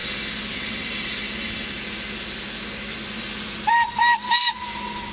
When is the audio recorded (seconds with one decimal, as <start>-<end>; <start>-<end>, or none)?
0.0-5.1

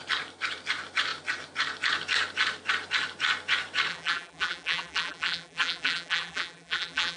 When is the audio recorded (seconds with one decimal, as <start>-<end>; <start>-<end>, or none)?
0.0-3.9

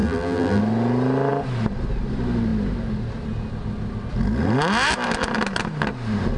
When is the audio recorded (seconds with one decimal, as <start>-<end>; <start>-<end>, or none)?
0.6-6.4

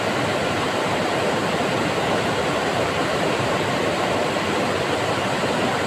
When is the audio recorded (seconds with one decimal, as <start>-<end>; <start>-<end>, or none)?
0.0-0.4; 1.6-2.7; 4.3-5.9

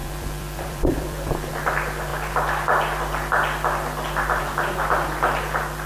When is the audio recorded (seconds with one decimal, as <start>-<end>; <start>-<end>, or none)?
1.5-5.9